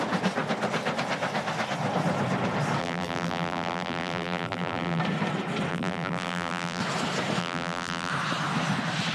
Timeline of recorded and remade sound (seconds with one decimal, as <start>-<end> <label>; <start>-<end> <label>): 0.0-2.8 recorded; 2.8-5.0 remade; 5.0-5.7 recorded; 5.7-6.8 remade; 6.8-7.4 recorded; 7.4-8.1 remade; 8.1-9.1 recorded

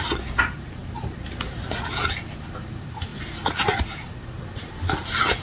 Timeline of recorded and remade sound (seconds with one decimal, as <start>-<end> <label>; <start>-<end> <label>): 0.0-0.8 remade; 0.8-1.5 recorded; 1.5-3.1 remade; 3.1-4.4 recorded; 4.4-5.4 remade

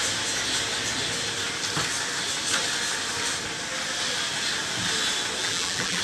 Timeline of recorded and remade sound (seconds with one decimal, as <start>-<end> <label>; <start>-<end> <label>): 0.0-5.4 recorded; 5.4-6.0 remade

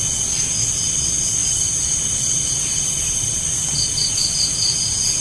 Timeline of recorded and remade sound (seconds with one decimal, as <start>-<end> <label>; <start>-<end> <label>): 0.0-1.4 recorded; 1.4-4.1 remade; 4.1-5.2 recorded